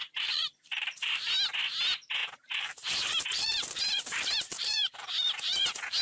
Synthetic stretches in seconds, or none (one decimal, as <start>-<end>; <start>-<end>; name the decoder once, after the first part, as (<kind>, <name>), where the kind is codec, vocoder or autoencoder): 0.0-1.3 (vocoder, BigVGAN v2); 2.2-5.6

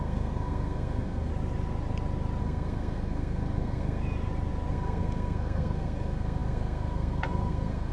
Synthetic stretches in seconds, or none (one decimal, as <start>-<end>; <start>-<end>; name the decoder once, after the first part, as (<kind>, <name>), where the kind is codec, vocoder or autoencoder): 0.0-1.3 (codec, SNAC); 2.4-4.0; 4.7-7.9

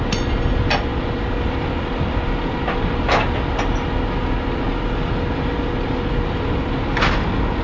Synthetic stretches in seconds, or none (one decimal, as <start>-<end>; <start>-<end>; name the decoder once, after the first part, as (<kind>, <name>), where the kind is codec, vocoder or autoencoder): none

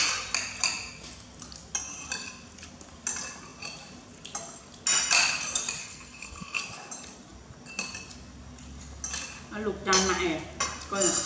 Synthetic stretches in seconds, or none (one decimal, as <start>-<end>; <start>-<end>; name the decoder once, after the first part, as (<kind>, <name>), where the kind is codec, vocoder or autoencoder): 5.8-6.6 (codec, SNAC)

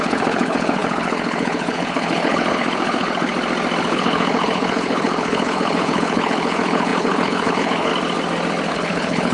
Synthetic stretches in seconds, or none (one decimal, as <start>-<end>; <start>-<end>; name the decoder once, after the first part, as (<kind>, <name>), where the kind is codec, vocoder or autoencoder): 0.0-3.3 (codec, HILCodec); 3.8-7.9; 8.7-9.3

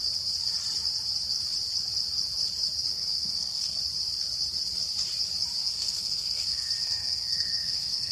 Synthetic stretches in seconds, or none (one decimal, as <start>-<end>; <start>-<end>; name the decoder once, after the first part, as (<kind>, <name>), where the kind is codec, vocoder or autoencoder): 2.9-3.8 (codec, SNAC); 5.6-8.1

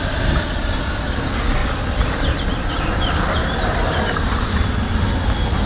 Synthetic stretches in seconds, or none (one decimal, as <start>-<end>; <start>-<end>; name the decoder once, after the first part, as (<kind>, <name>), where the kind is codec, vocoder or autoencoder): 3.4-5.3 (vocoder, BigVGAN v2)